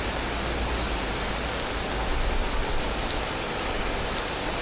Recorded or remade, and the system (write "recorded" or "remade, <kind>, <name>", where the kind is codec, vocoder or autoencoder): recorded